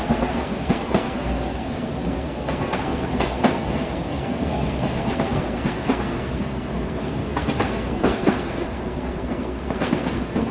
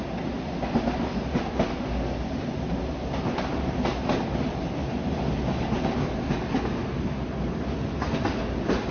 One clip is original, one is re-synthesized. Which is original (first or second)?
second